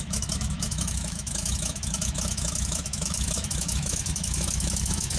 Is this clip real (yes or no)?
no